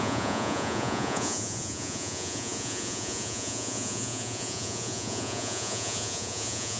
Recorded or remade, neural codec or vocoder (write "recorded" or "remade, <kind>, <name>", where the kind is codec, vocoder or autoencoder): remade, vocoder, Vocos